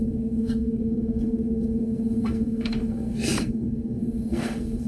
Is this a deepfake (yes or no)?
yes